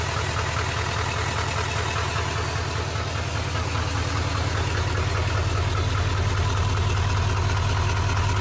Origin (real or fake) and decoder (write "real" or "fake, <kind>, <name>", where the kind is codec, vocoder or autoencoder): real